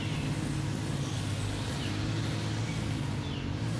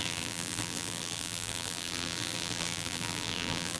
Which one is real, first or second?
first